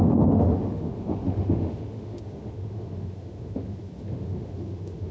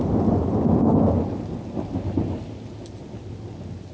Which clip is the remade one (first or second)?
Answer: first